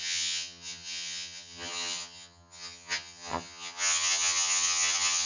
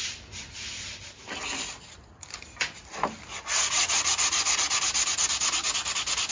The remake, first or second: first